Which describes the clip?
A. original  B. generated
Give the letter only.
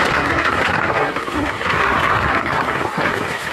B